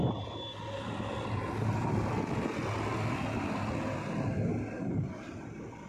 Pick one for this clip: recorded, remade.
recorded